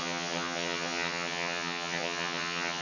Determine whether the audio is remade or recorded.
remade